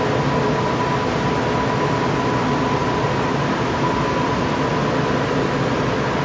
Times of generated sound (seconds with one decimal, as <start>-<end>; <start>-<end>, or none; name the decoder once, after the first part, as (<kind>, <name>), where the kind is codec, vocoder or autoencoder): none